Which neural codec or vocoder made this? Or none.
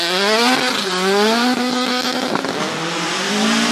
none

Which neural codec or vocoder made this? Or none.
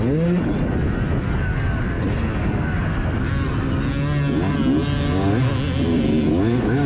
none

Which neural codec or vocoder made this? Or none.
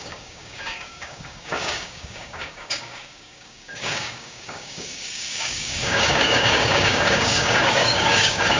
codec, DAC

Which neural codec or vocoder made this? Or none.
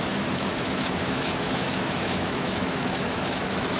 autoencoder, DAC-VAE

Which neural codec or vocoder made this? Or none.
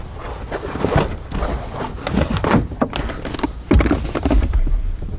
none